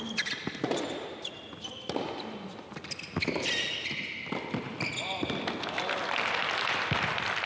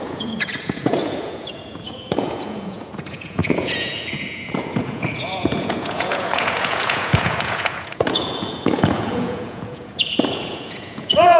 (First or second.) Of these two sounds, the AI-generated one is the second